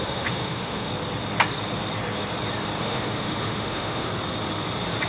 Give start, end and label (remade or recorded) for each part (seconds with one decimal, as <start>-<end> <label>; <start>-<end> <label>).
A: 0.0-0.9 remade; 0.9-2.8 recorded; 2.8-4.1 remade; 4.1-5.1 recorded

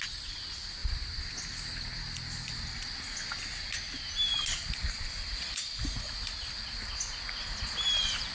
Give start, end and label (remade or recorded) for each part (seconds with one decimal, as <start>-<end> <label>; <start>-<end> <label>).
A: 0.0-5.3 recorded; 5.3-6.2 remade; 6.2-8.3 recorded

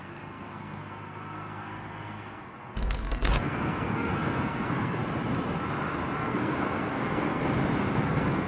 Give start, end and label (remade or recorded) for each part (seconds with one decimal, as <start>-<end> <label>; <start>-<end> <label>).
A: 0.0-5.0 remade; 5.0-6.2 recorded; 6.2-7.4 remade; 7.4-8.0 recorded; 8.0-8.5 remade